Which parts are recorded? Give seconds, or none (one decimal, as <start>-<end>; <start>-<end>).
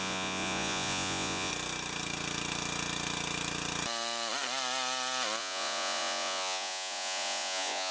1.5-5.4